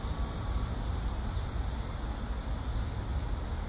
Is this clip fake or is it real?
real